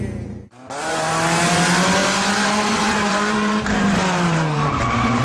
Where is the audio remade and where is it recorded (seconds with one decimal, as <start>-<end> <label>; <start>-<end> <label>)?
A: 0.0-2.0 recorded; 2.0-5.2 remade